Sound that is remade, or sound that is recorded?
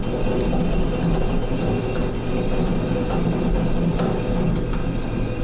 recorded